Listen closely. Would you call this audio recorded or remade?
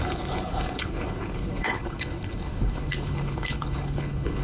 remade